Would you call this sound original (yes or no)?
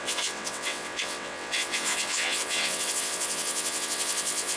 no